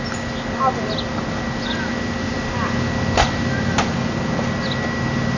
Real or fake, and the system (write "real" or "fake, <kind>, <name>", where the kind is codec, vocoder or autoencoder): real